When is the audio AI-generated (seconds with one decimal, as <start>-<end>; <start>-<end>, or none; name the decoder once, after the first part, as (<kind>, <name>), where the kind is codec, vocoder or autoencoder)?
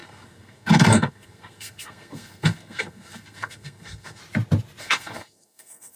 0.0-4.2 (codec, SNAC); 4.8-6.0